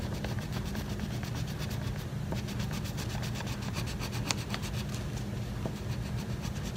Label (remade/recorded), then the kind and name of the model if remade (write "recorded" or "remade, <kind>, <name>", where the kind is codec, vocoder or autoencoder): recorded